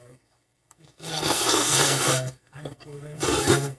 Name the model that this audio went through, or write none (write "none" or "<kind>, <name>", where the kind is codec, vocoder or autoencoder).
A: codec, SNAC